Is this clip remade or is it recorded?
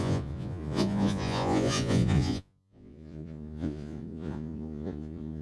remade